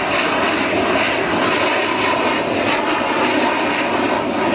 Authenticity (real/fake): real